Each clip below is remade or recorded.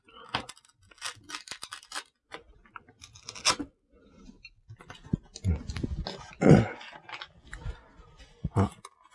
recorded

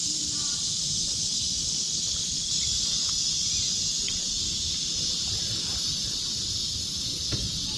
recorded